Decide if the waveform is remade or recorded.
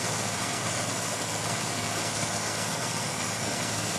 remade